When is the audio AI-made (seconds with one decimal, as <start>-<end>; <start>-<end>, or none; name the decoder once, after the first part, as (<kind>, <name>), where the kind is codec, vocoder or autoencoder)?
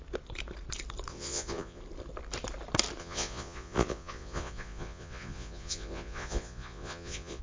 1.1-1.8 (vocoder, Vocos); 3.0-7.4